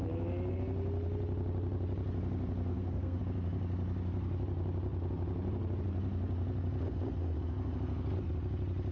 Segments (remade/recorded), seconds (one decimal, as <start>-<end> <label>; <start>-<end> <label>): 0.0-2.7 recorded; 2.7-3.2 remade; 3.2-8.9 recorded